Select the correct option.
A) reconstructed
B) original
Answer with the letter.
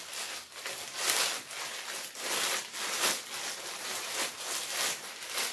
B